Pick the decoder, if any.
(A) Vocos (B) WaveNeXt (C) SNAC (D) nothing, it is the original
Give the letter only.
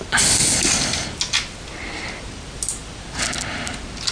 D